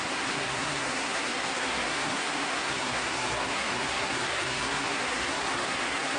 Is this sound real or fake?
fake